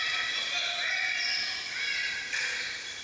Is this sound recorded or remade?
recorded